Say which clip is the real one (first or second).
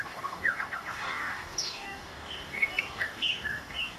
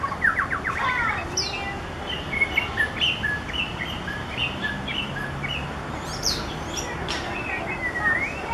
second